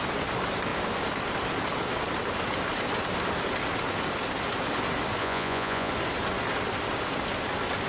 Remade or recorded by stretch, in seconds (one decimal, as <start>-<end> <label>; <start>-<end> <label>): 0.0-5.2 recorded; 5.2-5.9 remade; 5.9-7.9 recorded